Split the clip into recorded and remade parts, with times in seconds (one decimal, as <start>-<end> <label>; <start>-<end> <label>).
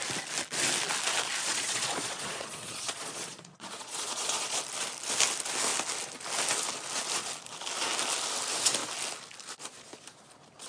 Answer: 0.0-1.4 recorded; 1.4-4.6 remade; 4.6-10.7 recorded